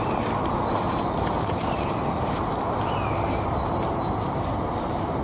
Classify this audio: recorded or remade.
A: remade